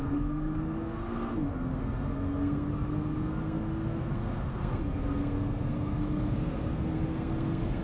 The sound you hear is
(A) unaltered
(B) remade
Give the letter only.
B